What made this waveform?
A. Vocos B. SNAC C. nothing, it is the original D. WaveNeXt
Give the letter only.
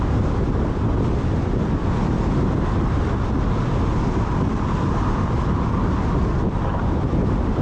C